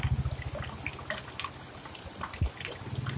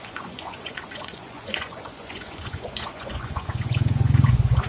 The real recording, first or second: first